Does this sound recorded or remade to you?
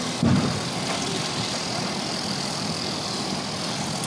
recorded